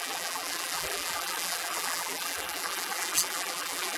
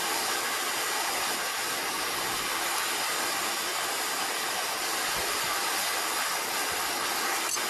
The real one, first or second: second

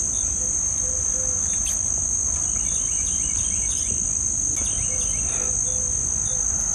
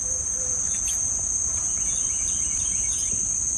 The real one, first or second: first